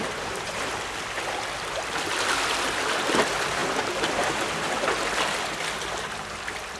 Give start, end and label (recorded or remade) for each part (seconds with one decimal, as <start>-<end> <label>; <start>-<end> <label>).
0.0-6.8 recorded